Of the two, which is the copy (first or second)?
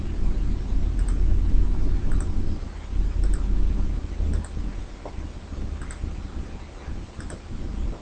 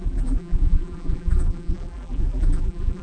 second